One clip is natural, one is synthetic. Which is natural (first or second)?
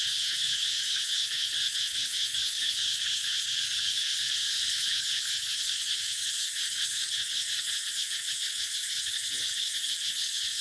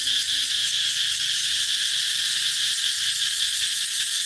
second